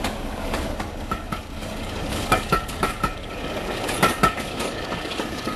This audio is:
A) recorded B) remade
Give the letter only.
B